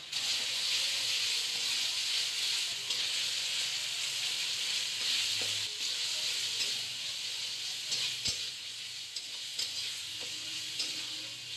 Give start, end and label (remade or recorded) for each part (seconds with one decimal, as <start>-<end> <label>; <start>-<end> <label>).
0.0-3.7 remade; 3.7-6.4 recorded; 6.4-11.6 remade